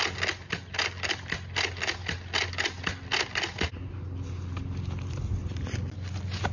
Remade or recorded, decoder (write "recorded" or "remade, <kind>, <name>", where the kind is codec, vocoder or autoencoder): recorded